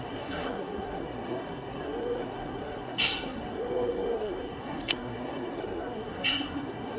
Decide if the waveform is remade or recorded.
remade